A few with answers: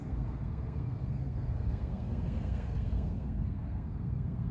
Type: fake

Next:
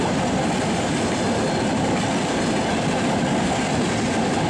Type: real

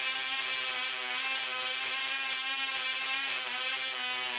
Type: real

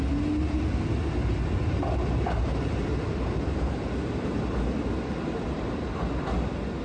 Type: real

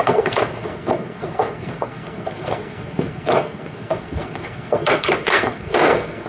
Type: fake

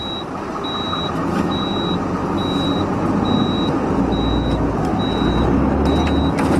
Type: real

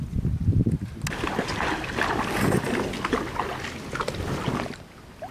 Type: real